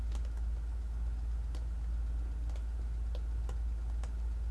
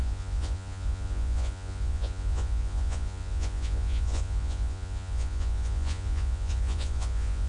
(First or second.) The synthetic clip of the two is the second